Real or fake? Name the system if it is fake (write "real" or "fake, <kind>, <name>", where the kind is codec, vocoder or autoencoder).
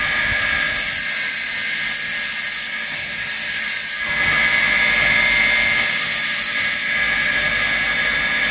real